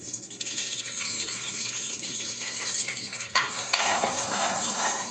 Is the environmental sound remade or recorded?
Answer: remade